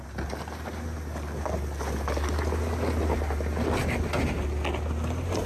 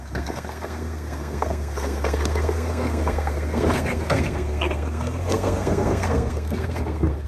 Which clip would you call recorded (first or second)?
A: first